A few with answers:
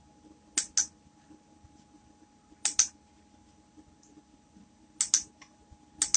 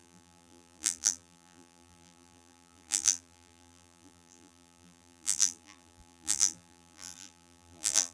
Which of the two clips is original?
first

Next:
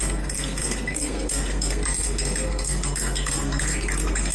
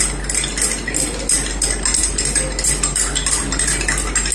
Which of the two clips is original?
second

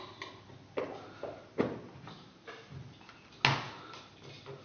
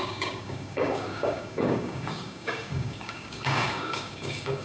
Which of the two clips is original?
first